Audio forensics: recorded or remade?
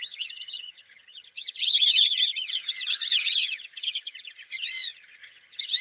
remade